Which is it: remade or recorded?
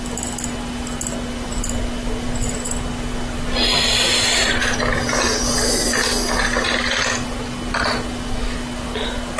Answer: recorded